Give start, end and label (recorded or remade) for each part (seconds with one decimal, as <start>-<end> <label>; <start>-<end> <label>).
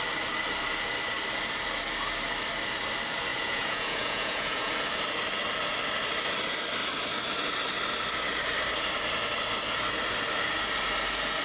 0.0-3.3 recorded; 3.3-4.7 remade; 4.7-11.4 recorded